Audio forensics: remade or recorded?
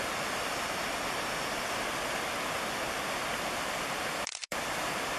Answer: remade